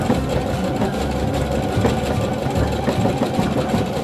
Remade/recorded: recorded